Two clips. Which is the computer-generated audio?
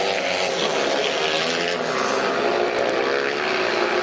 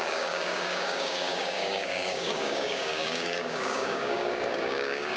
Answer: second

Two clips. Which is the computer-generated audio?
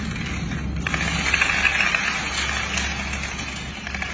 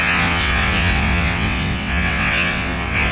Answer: second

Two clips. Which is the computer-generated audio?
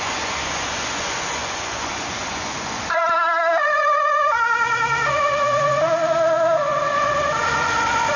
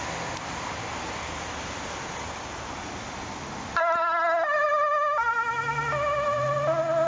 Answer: first